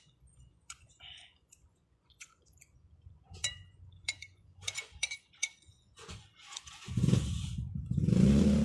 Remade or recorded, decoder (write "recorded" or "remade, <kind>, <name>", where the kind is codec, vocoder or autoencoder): remade, vocoder, Vocos